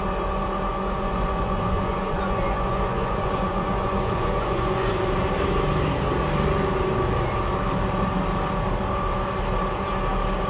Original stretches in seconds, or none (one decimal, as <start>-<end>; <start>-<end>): 0.0-0.7; 4.9-10.5